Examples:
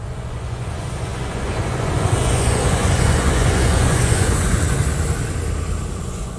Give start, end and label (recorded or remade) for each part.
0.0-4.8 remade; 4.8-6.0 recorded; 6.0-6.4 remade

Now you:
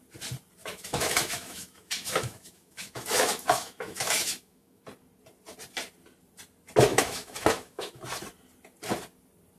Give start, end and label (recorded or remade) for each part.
0.0-0.6 recorded; 0.6-4.8 remade; 4.8-6.9 recorded; 6.9-8.0 remade; 8.0-9.6 recorded

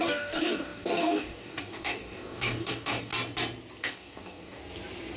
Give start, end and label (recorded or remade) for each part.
0.0-3.1 remade; 3.1-3.8 recorded; 3.8-4.6 remade; 4.6-5.2 recorded

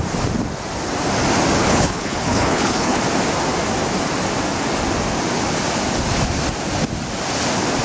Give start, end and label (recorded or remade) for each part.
0.0-1.6 recorded; 1.6-3.0 remade; 3.0-7.8 recorded

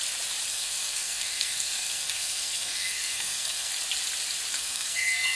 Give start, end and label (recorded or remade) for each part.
0.0-0.5 recorded; 0.5-3.7 remade; 3.7-4.5 recorded; 4.5-5.4 remade

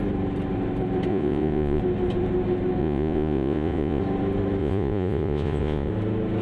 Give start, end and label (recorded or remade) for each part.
0.0-1.1 recorded; 1.1-1.8 remade; 1.8-2.8 recorded; 2.8-4.0 remade; 4.0-4.6 recorded; 4.6-5.9 remade; 5.9-6.4 recorded